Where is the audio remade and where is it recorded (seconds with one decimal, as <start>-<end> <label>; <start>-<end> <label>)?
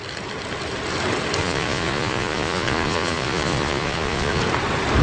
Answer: 0.0-1.4 recorded; 1.4-4.4 remade; 4.4-5.0 recorded